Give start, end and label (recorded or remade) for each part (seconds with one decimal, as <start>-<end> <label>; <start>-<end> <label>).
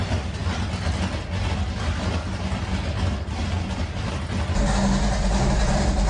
0.0-6.1 recorded